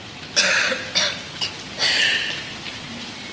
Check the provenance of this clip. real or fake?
real